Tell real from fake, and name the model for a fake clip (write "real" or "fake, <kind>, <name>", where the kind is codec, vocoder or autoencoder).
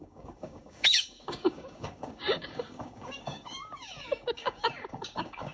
fake, codec, DAC